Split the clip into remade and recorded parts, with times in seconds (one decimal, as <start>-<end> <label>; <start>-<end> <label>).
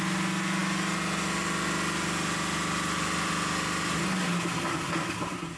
0.0-5.6 recorded